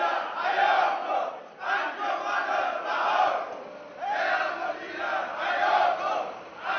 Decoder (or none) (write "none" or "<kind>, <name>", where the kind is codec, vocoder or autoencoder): none